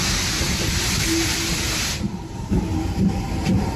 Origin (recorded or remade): remade